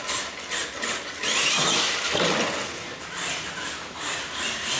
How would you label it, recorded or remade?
recorded